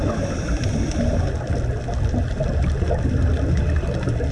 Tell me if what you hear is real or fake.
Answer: real